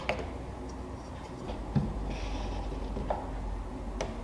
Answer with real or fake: real